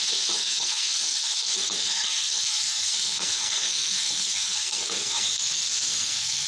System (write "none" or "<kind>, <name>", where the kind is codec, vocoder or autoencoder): codec, SNAC